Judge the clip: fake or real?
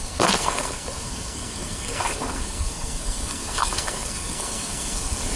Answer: fake